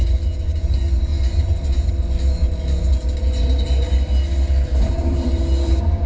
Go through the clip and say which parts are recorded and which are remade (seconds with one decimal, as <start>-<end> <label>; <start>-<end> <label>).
0.0-1.1 recorded; 1.1-1.9 remade; 1.9-4.7 recorded; 4.7-6.1 remade